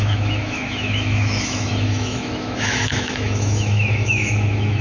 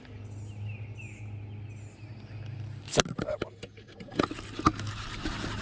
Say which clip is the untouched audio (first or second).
second